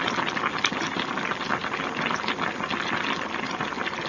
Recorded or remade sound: recorded